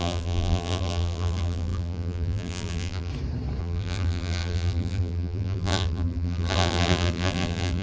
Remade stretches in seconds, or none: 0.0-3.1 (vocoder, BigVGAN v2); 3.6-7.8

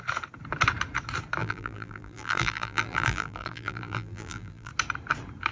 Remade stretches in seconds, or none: 1.4-4.7 (vocoder, BigVGAN v2)

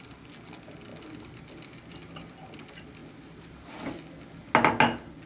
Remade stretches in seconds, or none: 0.0-0.9 (vocoder, BigVGAN v2); 1.9-3.0

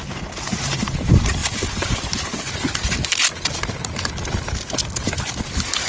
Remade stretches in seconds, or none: none

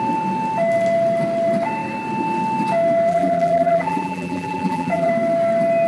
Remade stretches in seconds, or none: 3.1-5.1 (vocoder, BigVGAN v2)

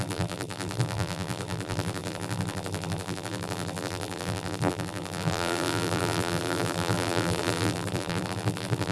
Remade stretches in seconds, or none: 0.0-8.9 (vocoder, BigVGAN v2)